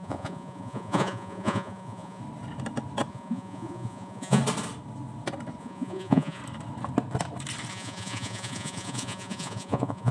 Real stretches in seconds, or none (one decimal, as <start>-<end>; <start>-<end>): 2.2-3.1; 4.4-5.6; 6.4-7.7